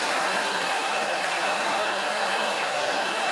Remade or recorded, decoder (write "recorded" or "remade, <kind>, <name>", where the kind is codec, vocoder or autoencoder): remade, codec, SNAC